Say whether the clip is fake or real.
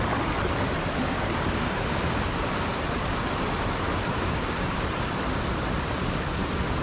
real